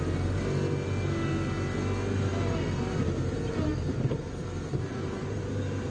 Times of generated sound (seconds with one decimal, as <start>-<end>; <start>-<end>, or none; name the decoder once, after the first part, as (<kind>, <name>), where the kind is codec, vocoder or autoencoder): 2.3-5.9 (vocoder, BigVGAN v2)